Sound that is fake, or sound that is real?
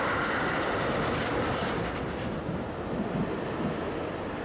real